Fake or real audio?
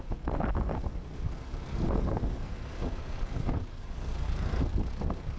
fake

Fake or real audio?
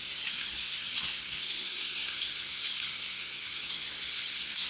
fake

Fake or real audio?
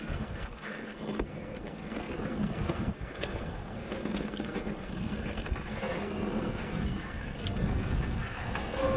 fake